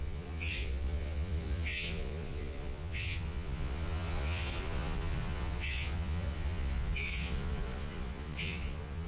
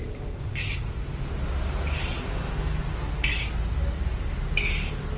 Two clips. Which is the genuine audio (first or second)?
second